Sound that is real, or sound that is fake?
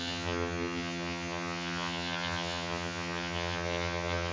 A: fake